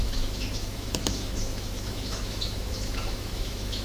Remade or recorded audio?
remade